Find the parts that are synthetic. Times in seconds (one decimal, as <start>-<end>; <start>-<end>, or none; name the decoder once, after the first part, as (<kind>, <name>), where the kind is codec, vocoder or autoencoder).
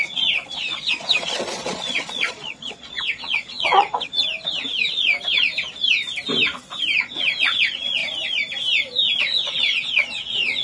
0.0-4.2 (vocoder, Vocos); 7.0-8.0; 9.2-10.6